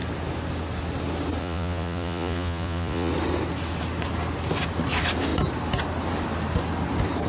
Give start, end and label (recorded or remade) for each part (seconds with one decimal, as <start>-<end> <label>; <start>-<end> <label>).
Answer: 0.0-1.4 recorded; 1.4-3.1 remade; 3.1-7.3 recorded